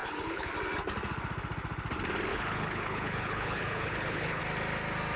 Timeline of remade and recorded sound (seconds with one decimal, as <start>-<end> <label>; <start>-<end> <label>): 0.0-0.5 remade; 0.5-2.3 recorded; 2.3-4.4 remade; 4.4-5.2 recorded